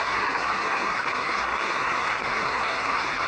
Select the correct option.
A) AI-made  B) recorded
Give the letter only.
A